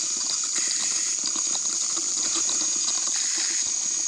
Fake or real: real